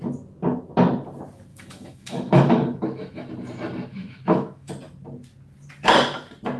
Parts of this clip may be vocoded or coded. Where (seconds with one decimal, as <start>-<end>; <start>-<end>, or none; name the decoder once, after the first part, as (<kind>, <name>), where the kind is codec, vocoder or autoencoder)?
1.5-3.3 (autoencoder, DAC-VAE); 3.9-4.7